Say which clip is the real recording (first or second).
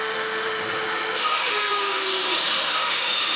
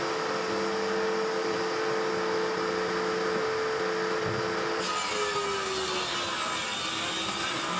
second